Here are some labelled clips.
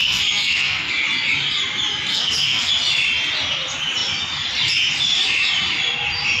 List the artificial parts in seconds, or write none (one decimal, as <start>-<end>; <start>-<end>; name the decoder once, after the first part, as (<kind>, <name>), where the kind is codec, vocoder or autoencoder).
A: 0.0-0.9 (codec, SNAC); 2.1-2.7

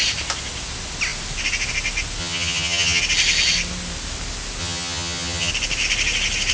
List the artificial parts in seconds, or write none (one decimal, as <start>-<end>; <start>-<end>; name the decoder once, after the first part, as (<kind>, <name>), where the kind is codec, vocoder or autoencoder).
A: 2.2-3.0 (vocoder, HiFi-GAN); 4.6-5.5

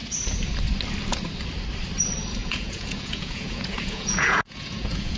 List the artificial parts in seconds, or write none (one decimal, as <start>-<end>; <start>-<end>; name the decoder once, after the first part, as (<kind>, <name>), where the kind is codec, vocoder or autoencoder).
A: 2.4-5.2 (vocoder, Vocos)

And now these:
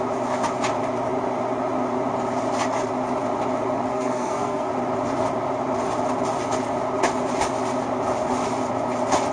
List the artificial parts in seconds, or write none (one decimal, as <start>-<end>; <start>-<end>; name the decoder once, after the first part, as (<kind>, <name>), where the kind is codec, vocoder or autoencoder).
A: 3.9-4.7 (codec, SNAC)

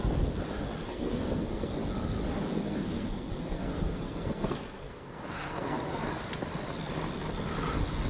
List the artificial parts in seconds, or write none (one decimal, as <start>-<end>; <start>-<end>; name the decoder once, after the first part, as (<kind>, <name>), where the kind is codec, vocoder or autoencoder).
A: 0.9-1.7 (codec, SNAC); 2.6-6.0

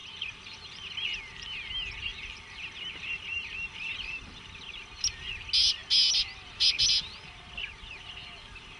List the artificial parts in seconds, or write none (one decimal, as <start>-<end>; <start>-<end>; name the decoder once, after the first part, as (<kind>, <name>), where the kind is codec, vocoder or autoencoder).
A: 0.0-1.2 (vocoder, BigVGAN v2); 2.1-5.1

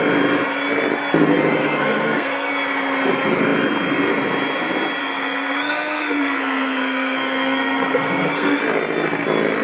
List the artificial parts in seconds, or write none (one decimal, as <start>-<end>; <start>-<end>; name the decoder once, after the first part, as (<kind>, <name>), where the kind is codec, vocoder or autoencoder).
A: 1.6-2.5 (codec, SNAC); 5.0-8.6

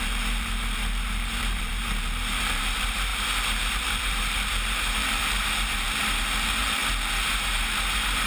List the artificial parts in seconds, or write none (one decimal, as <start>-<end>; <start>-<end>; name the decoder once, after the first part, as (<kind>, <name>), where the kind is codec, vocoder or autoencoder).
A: 0.0-3.1 (vocoder, BigVGAN v2); 3.8-6.8; 7.3-8.3